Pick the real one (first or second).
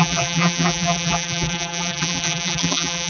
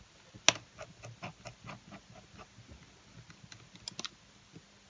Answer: second